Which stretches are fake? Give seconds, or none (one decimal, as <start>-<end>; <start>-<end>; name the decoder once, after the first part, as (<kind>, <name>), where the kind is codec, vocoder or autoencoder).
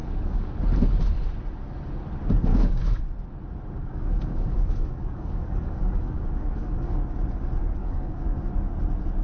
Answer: 0.0-0.6 (codec, DAC); 2.5-3.0; 3.8-7.0; 7.8-8.4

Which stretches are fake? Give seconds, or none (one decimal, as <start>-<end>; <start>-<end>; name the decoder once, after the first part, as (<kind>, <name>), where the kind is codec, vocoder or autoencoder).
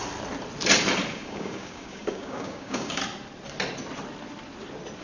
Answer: 1.1-3.0 (codec, DAC)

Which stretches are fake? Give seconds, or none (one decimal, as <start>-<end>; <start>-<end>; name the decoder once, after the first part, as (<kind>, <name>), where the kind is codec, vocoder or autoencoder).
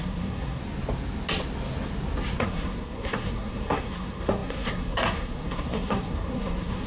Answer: 0.0-0.6 (codec, SNAC); 2.4-6.9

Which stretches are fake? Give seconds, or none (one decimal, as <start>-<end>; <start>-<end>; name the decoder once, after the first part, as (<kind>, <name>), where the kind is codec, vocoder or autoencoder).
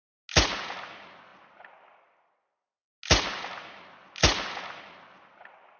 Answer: none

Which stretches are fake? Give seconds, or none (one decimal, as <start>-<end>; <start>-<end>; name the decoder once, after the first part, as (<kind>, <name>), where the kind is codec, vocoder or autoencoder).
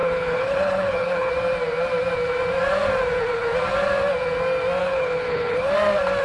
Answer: 0.0-1.3 (codec, HILCodec); 4.8-5.7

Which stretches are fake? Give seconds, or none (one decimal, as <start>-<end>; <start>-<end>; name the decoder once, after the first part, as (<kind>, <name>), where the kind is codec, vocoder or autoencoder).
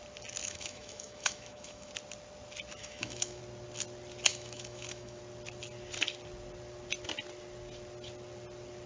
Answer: 0.4-1.9 (autoencoder, DAC-VAE); 2.8-3.4; 4.3-5.2